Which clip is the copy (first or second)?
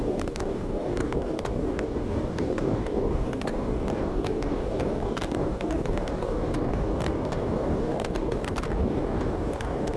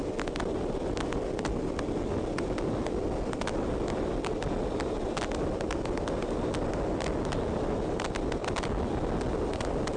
first